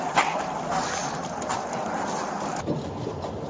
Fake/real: real